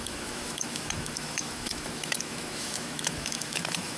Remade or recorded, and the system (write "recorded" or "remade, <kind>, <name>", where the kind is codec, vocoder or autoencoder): remade, autoencoder, DAC-VAE